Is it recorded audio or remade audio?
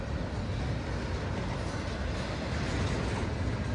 recorded